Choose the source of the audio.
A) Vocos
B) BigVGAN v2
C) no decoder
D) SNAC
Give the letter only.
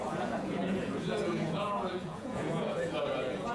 A